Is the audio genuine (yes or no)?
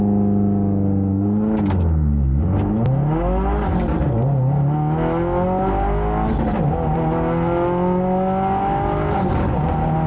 yes